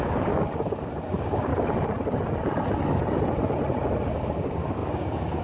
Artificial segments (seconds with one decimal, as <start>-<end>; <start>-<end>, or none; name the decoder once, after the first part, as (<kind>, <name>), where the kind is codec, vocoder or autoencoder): 0.0-1.5 (codec, DAC); 4.1-5.4